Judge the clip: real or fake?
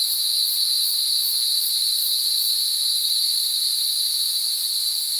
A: real